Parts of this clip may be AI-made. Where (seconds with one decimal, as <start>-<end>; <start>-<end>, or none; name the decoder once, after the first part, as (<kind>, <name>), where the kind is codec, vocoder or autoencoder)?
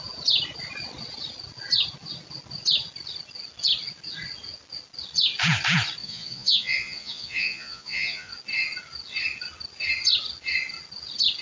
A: 6.0-8.3 (vocoder, Vocos)